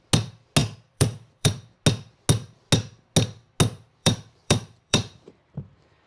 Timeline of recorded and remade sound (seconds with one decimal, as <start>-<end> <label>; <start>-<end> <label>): 0.0-0.6 recorded; 0.6-1.5 remade; 1.5-4.0 recorded; 4.0-5.5 remade; 5.5-6.1 recorded